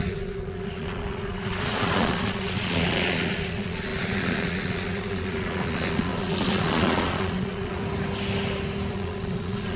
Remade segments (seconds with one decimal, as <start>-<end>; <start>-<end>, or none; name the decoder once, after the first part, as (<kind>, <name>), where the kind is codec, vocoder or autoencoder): 0.0-7.8 (vocoder, Vocos); 8.9-9.8